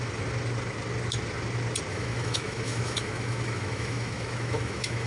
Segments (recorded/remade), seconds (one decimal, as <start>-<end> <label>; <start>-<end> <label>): 0.0-1.9 recorded; 1.9-5.1 remade